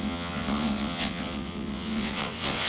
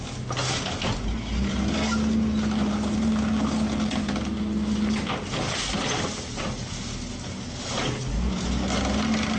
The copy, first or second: first